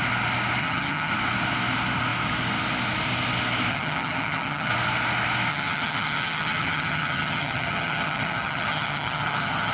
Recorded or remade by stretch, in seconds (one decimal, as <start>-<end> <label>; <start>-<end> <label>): 0.0-0.6 recorded; 0.6-1.1 remade; 1.1-3.7 recorded; 3.7-4.7 remade; 4.7-5.5 recorded; 5.5-9.7 remade